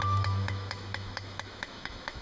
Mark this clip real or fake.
fake